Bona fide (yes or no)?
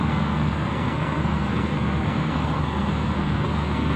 no